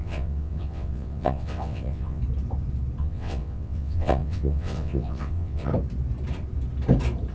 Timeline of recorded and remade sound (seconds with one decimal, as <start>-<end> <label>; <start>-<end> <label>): 0.0-2.2 remade; 2.2-3.0 recorded; 3.0-5.7 remade; 5.7-7.3 recorded